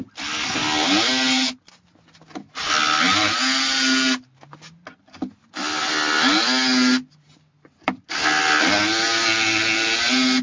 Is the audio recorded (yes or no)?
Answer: yes